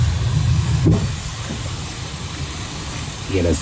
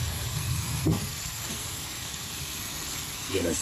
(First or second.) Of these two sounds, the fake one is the second